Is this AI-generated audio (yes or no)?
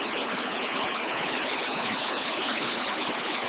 yes